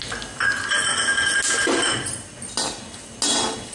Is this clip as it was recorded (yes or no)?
yes